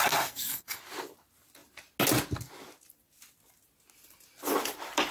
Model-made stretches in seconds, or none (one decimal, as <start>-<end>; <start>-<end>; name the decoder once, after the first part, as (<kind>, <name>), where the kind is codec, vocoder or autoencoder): 0.0-0.8 (codec, SNAC)